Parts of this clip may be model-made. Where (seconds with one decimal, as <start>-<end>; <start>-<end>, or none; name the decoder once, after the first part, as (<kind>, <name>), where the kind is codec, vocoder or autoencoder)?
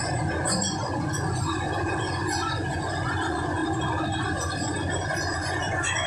0.0-3.6 (vocoder, Vocos); 4.2-6.1